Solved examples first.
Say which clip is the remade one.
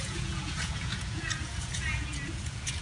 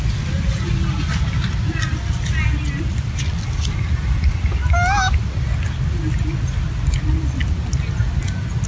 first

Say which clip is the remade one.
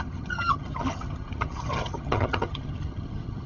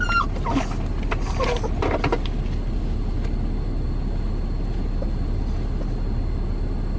first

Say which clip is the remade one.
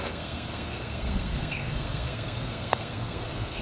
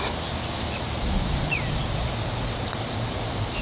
first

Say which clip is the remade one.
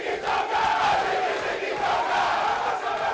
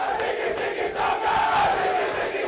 first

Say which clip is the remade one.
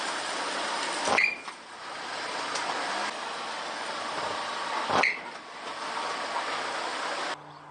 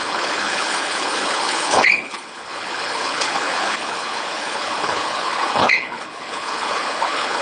second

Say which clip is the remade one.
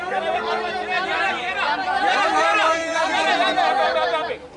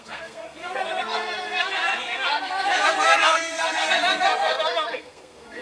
second